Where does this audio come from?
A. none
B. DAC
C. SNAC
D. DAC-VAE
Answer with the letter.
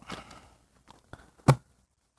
A